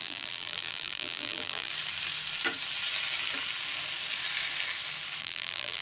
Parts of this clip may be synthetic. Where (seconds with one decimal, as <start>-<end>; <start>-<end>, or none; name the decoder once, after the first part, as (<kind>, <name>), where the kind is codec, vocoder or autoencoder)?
0.0-1.7 (vocoder, BigVGAN v2); 5.2-5.8